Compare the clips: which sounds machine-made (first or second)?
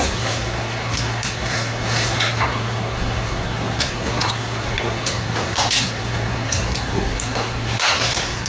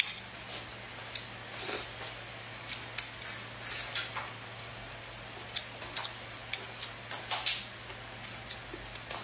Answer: first